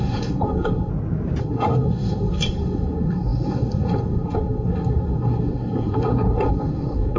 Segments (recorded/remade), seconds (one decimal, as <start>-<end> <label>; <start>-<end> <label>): 0.0-0.9 remade; 0.9-1.4 recorded; 1.4-7.2 remade